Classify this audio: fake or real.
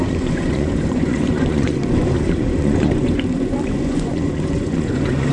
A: fake